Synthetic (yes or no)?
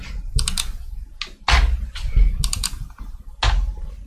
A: no